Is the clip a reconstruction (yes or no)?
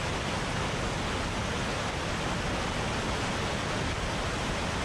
no